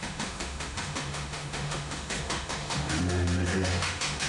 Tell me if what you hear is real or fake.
fake